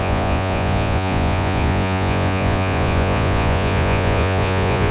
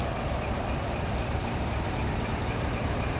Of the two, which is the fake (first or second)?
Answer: first